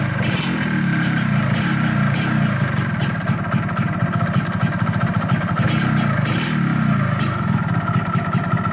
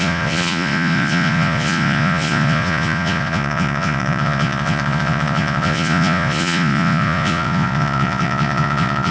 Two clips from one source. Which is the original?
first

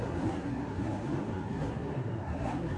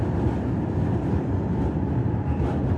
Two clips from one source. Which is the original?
second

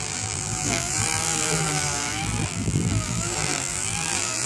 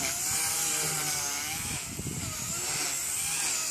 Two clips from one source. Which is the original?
second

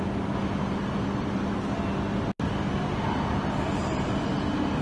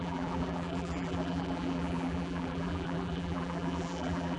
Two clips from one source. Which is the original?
first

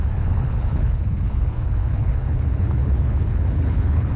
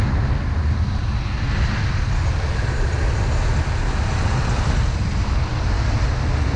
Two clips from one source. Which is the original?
second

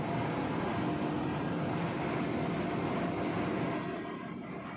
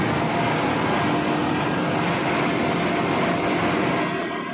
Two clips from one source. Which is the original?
second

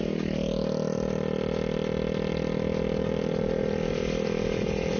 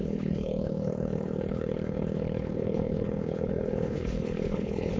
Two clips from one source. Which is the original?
first